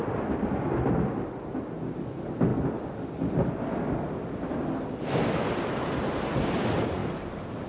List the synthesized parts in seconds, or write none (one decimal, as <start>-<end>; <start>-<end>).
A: 7.0-7.7